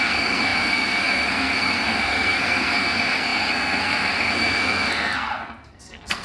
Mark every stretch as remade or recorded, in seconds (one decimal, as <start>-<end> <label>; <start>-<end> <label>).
0.0-6.2 remade